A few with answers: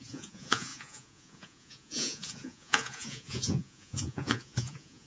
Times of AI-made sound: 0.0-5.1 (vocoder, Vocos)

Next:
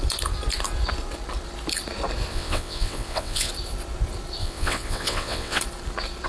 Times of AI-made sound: 2.3-3.5 (vocoder, WaveNeXt); 4.4-5.6

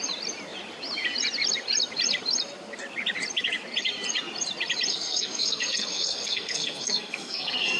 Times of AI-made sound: 4.9-7.8 (codec, SNAC)

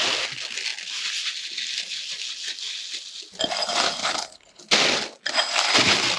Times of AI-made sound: 4.0-4.6 (codec, HILCodec)

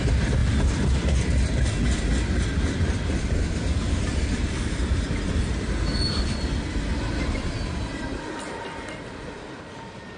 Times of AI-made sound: none

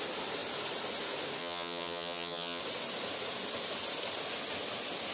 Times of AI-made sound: 1.4-2.6 (vocoder, HiFi-GAN)